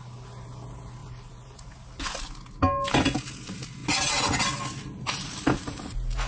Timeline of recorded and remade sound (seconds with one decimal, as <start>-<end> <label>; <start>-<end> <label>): 0.0-6.3 recorded